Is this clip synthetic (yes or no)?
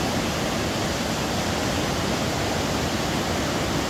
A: no